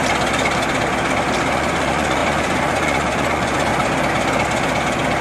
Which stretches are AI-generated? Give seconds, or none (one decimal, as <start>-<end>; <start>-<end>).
1.5-3.7

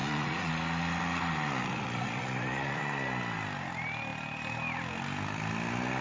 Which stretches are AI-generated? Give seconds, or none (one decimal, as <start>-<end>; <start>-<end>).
0.0-0.5; 1.6-2.8

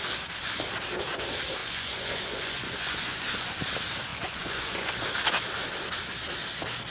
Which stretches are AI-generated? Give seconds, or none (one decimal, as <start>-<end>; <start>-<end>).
1.6-3.5; 4.1-4.9

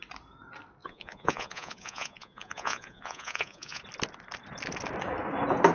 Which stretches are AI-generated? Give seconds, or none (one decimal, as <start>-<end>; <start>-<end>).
0.8-3.8